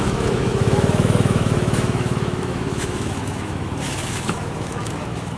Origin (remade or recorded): remade